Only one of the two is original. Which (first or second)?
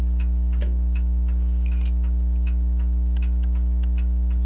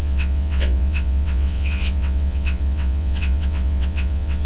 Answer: first